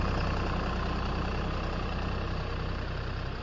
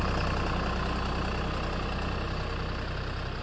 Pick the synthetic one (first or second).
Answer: first